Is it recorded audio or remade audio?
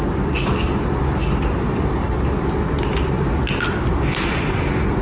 recorded